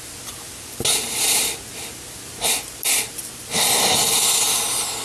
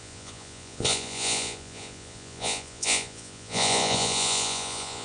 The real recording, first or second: first